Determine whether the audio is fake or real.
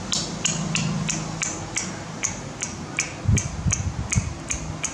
real